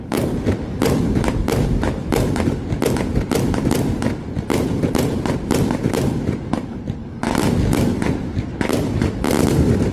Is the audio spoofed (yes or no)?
no